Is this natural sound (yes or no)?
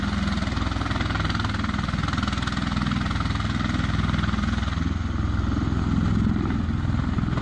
yes